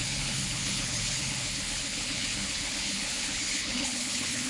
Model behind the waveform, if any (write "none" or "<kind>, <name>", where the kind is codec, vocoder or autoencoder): codec, HILCodec